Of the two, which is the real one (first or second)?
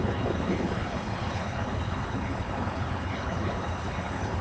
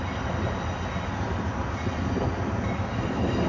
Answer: second